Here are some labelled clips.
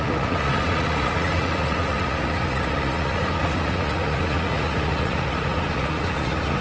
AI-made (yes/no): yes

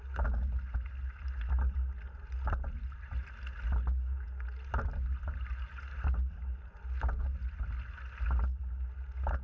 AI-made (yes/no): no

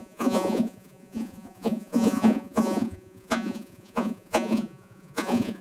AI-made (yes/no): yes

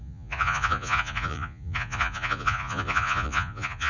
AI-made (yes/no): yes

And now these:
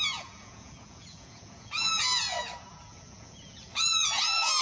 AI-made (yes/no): yes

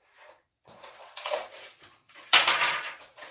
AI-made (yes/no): yes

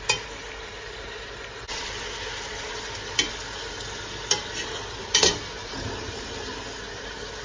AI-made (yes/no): no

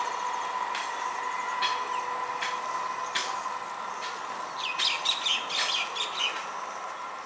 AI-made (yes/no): no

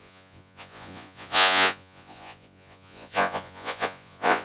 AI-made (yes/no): yes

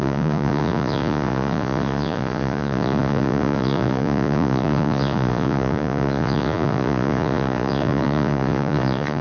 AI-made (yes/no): yes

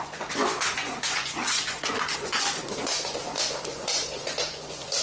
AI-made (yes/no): yes